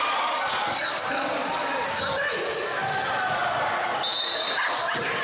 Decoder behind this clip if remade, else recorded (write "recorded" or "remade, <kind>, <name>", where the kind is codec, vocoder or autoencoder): recorded